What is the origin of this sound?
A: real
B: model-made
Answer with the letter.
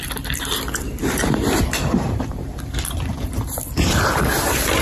B